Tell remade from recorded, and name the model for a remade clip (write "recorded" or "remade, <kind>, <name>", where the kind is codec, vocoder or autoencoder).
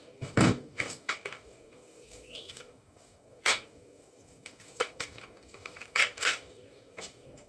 remade, codec, DAC